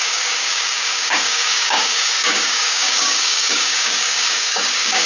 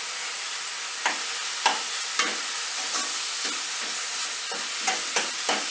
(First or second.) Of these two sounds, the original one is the second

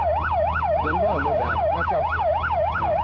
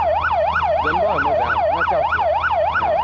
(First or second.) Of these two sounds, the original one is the second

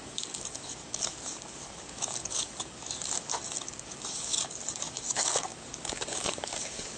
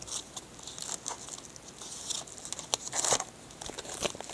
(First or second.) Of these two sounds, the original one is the second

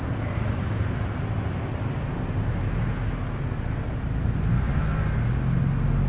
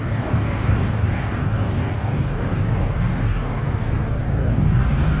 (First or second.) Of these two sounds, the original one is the first